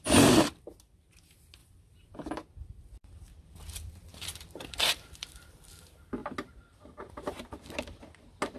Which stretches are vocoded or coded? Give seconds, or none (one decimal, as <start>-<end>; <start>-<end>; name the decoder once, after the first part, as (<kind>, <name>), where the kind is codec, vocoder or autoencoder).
1.6-2.3 (vocoder, BigVGAN v2); 4.1-5.7